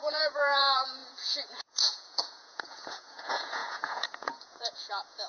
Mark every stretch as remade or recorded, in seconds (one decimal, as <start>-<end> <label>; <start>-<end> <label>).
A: 0.0-5.3 remade